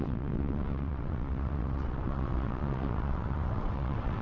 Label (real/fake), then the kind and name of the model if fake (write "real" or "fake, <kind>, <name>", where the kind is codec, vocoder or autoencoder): fake, vocoder, WaveNeXt